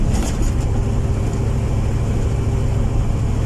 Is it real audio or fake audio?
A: real